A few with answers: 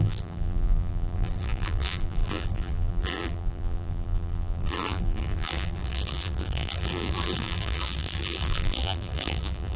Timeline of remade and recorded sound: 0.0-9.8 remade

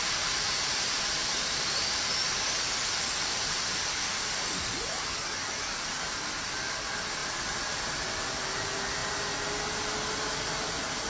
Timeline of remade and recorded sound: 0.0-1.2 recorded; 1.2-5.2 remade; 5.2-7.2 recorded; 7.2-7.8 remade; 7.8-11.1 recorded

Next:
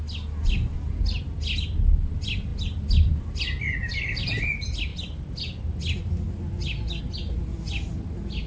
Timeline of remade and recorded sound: 0.0-8.5 recorded

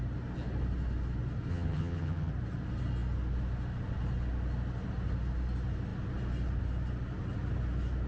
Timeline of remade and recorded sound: 0.0-1.5 recorded; 1.5-2.3 remade; 2.3-8.1 recorded

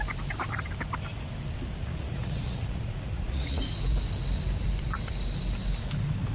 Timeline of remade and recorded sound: 0.0-1.8 recorded; 1.8-3.6 remade; 3.6-6.3 recorded